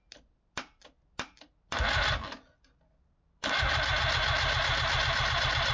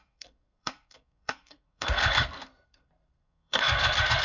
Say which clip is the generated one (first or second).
second